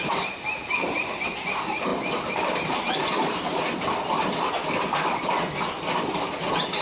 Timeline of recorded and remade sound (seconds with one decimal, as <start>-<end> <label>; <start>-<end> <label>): 0.0-4.6 remade; 4.6-6.8 recorded